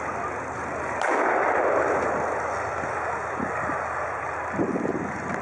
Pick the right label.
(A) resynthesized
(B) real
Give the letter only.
B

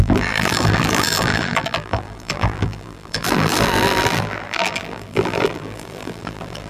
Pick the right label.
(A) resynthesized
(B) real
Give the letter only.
A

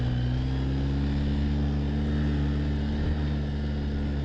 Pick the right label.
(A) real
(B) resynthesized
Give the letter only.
A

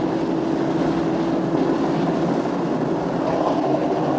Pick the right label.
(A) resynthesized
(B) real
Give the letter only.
B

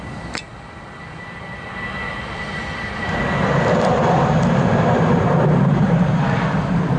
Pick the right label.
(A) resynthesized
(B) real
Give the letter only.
A